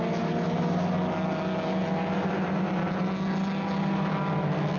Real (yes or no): yes